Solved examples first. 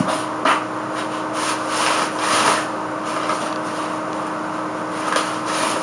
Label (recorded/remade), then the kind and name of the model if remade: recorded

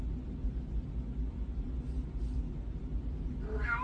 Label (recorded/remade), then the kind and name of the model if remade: recorded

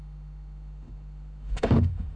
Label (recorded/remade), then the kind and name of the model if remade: remade, autoencoder, DAC-VAE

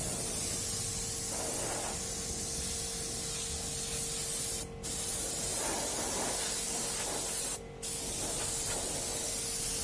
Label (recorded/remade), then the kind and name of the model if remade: recorded